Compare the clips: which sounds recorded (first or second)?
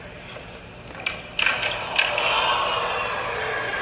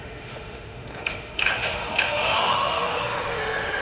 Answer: first